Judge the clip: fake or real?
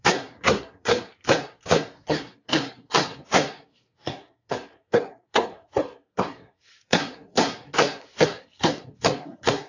fake